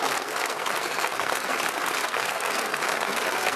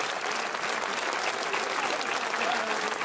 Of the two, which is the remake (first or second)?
first